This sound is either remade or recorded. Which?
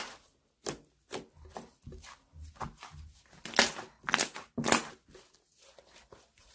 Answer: recorded